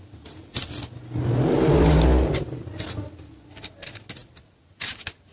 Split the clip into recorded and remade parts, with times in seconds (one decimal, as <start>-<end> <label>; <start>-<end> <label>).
0.0-5.3 recorded